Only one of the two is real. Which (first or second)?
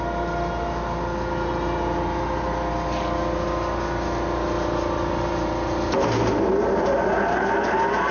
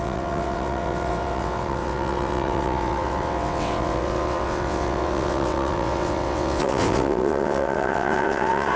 first